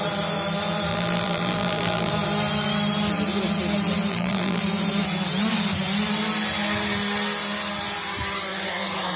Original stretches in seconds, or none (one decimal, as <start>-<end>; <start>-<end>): 0.0-0.9; 2.1-4.1; 4.6-9.2